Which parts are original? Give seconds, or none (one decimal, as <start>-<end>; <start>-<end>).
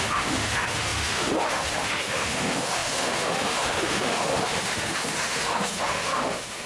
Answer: none